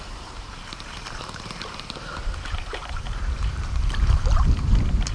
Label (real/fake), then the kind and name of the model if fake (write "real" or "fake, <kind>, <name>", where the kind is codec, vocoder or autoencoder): fake, vocoder, BigVGAN v2